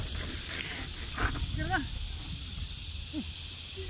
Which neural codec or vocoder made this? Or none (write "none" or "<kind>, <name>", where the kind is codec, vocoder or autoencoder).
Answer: none